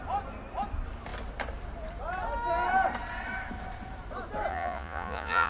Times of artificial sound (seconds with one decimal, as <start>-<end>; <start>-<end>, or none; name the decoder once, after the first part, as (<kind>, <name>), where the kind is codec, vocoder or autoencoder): 4.5-5.5 (vocoder, Vocos)